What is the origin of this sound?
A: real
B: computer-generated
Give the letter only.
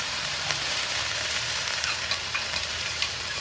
B